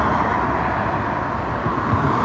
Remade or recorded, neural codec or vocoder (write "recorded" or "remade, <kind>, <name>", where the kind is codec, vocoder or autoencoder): recorded